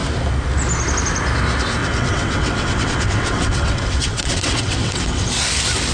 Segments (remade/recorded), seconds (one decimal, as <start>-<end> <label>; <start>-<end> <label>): 0.0-1.8 recorded; 1.8-5.3 remade; 5.3-5.9 recorded